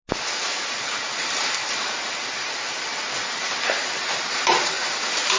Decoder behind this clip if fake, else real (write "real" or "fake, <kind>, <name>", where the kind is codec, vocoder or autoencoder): real